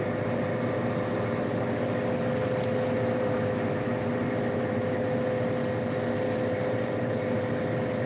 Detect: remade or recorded recorded